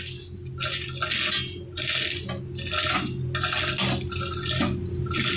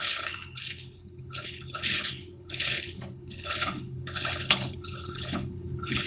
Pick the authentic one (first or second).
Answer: first